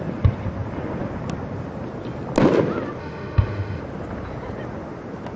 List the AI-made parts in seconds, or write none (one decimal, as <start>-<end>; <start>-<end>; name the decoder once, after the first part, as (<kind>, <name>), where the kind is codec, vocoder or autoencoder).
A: 3.0-3.8 (autoencoder, DAC-VAE)